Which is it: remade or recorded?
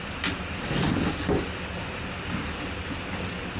recorded